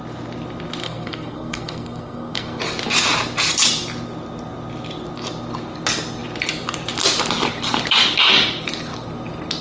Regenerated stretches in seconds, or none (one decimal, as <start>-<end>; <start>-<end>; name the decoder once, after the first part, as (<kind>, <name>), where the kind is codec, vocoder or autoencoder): 0.8-2.6 (codec, SNAC)